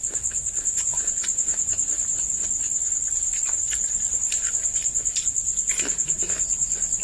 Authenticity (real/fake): real